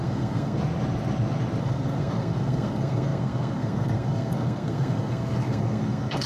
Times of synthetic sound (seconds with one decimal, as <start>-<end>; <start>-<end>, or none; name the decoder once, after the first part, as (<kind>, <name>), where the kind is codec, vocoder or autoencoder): 0.0-0.6 (codec, SNAC); 1.6-6.3